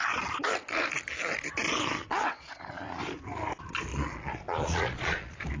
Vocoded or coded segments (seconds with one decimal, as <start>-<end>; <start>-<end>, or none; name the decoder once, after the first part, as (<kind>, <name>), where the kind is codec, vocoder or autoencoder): 2.0-2.6 (vocoder, Vocos); 3.9-5.6